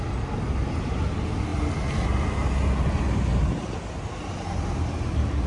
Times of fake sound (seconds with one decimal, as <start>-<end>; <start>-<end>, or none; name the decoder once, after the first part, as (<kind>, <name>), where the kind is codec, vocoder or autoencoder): none